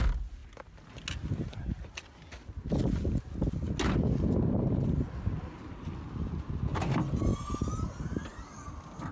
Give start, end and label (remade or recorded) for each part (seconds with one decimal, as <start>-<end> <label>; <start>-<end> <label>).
0.0-9.1 recorded

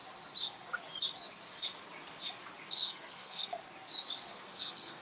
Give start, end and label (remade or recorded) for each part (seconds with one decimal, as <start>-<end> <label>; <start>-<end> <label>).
0.0-2.7 recorded; 2.7-3.6 remade; 3.6-4.3 recorded; 4.3-5.0 remade

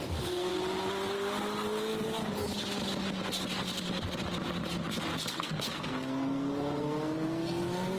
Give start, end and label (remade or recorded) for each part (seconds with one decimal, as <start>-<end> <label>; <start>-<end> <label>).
0.0-0.5 remade; 0.5-5.3 recorded; 5.3-8.0 remade

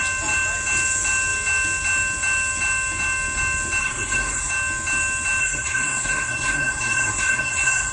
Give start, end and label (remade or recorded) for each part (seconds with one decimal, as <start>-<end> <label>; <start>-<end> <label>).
0.0-3.8 recorded; 3.8-4.5 remade; 4.5-5.4 recorded; 5.4-7.9 remade

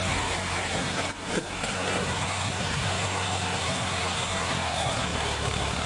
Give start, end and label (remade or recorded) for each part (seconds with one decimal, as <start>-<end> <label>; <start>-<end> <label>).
0.0-5.9 remade